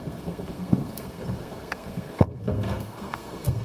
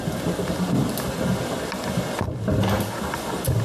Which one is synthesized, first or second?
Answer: first